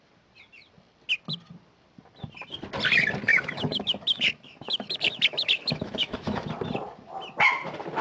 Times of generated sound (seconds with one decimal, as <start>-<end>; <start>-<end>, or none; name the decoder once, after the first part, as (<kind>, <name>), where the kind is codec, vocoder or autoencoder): 3.3-6.5 (autoencoder, DAC-VAE)